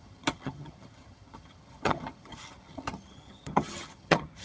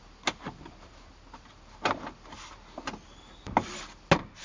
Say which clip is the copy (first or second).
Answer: first